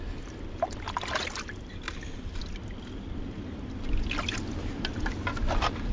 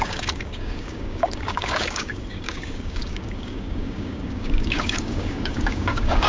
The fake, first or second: second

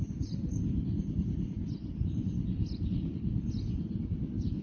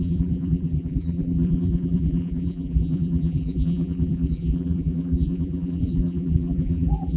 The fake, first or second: second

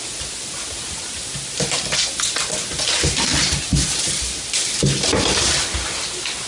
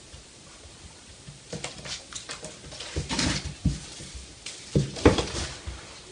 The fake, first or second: second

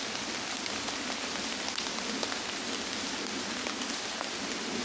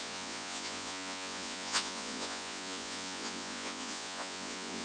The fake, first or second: second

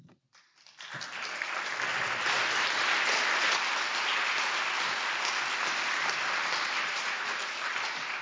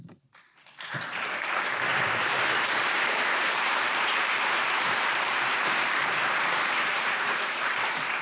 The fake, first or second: second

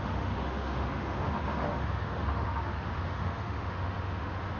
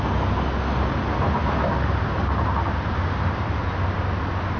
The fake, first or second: first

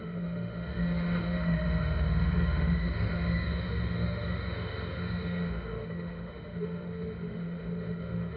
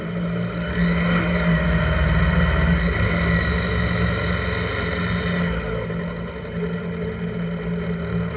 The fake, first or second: first